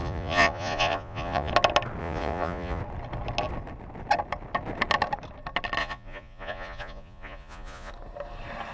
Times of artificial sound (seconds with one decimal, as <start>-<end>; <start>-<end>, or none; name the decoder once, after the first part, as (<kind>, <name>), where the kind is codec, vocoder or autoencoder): 0.0-1.5 (vocoder, Vocos); 2.0-2.8; 5.8-7.9

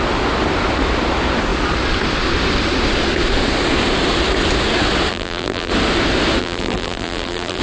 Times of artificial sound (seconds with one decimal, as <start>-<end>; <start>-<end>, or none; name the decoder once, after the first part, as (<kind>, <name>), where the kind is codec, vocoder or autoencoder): 5.1-5.7 (vocoder, BigVGAN v2); 6.4-7.6

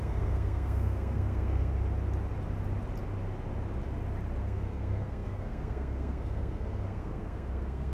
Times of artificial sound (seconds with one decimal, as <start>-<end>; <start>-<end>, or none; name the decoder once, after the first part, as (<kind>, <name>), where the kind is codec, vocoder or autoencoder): 0.0-1.7 (codec, SNAC); 4.4-7.9

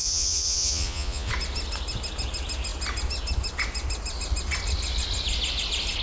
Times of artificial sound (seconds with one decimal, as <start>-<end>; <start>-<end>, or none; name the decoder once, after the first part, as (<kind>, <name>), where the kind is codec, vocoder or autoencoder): 0.0-1.3 (vocoder, Vocos)